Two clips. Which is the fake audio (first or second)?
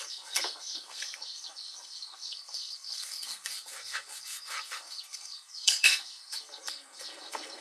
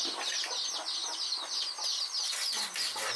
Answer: first